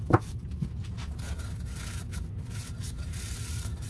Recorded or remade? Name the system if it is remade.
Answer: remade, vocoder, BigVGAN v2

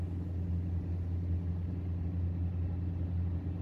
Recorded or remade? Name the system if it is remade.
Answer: recorded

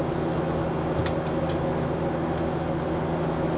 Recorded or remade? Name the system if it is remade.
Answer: recorded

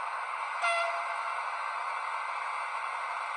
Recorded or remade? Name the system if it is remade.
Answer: recorded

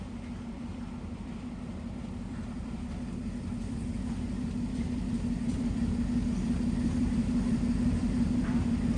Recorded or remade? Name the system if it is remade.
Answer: remade, vocoder, BigVGAN v2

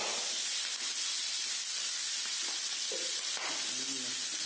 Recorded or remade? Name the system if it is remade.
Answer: recorded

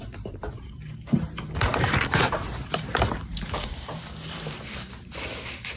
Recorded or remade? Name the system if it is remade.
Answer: remade, vocoder, BigVGAN v2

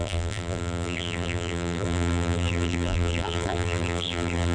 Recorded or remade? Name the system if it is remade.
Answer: remade, vocoder, BigVGAN v2